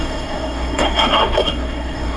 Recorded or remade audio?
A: remade